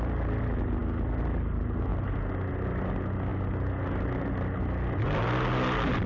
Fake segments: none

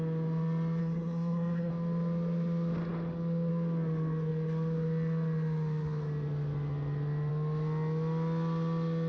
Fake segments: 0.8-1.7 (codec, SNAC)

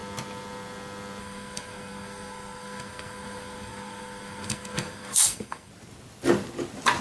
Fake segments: 1.2-5.7 (codec, SNAC)

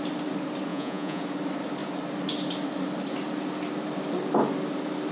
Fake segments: 0.7-1.2 (vocoder, Vocos)

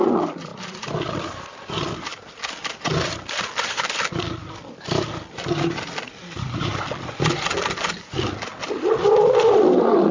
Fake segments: 0.0-6.7 (vocoder, BigVGAN v2); 8.1-8.5; 9.0-10.1